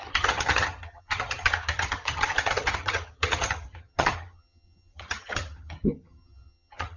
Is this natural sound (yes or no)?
no